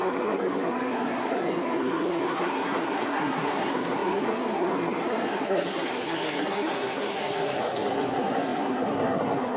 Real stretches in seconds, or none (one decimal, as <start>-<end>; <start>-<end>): none